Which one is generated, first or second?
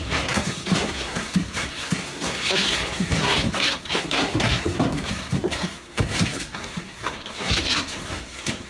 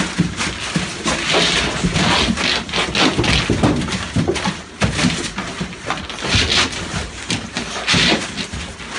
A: first